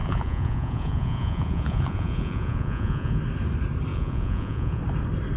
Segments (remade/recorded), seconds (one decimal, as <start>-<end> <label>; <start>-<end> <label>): 0.0-3.2 remade; 3.2-3.9 recorded; 3.9-4.8 remade; 4.8-5.4 recorded